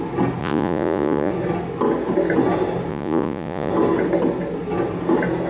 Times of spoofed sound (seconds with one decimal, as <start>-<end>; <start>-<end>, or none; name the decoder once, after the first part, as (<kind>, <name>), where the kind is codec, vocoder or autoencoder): 0.4-1.3 (vocoder, Vocos); 2.9-3.7